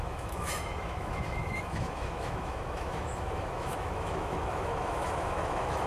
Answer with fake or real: fake